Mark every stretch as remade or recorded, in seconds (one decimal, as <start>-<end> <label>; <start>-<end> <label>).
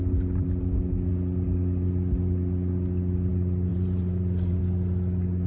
0.0-3.7 recorded; 3.7-4.6 remade; 4.6-5.5 recorded